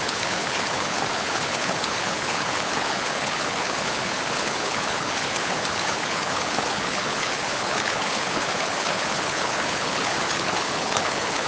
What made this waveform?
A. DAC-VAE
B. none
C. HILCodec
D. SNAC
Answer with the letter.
C